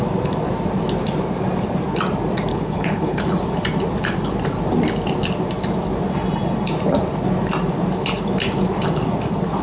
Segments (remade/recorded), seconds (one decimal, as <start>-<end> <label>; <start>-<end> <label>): 0.0-2.5 recorded; 2.5-3.2 remade; 3.2-9.6 recorded